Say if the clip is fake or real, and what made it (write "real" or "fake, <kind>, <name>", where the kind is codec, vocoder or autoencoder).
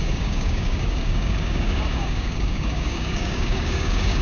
fake, codec, DAC